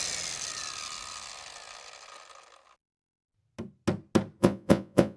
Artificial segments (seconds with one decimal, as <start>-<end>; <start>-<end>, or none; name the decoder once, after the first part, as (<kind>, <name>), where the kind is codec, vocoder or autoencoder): 4.4-5.2 (vocoder, Vocos)